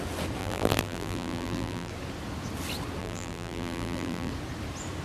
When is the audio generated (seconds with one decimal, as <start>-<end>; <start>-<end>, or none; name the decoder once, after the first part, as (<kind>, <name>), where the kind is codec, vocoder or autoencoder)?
0.4-1.9 (vocoder, BigVGAN v2); 3.0-4.3